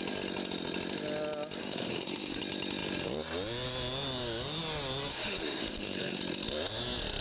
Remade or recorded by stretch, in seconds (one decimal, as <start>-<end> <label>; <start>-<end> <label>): 0.0-1.6 recorded; 1.6-2.4 remade; 2.4-5.1 recorded; 5.1-6.2 remade; 6.2-7.2 recorded